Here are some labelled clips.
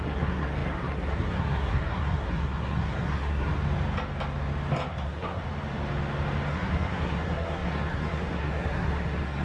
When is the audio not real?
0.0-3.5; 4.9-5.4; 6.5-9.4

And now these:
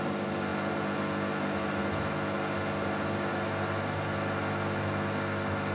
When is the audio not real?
none

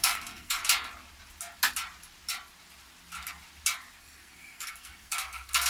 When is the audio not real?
0.0-0.6; 4.0-5.7

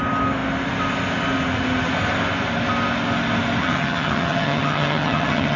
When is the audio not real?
3.6-5.6

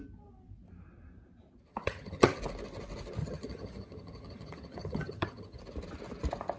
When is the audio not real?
1.7-2.4; 3.2-5.6